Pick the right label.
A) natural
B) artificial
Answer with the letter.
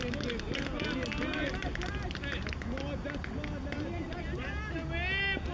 A